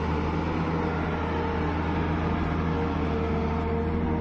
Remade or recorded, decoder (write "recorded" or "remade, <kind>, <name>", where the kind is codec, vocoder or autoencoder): recorded